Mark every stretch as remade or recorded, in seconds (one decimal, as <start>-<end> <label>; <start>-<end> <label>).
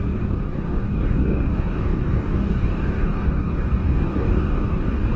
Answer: 0.0-5.2 remade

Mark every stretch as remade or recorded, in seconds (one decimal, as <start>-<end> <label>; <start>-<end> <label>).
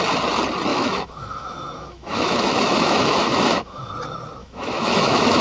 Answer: 0.0-0.7 recorded; 0.7-3.9 remade; 3.9-4.4 recorded; 4.4-5.4 remade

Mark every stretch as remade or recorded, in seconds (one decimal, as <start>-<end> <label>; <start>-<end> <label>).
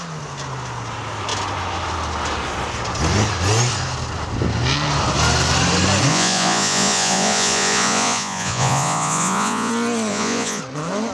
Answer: 0.0-6.1 recorded; 6.1-9.7 remade; 9.7-10.1 recorded; 10.1-10.6 remade; 10.6-11.1 recorded